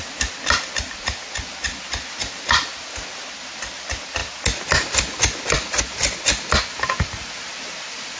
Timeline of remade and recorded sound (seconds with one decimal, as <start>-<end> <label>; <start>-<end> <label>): 0.0-8.2 recorded